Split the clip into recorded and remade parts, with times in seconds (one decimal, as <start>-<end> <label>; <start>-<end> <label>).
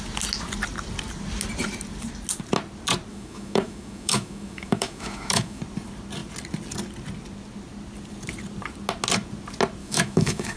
0.0-3.1 recorded; 3.1-5.6 remade; 5.6-9.8 recorded; 9.8-10.6 remade